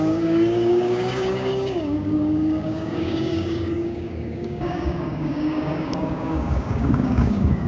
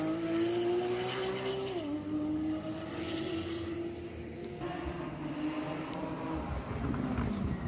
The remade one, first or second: first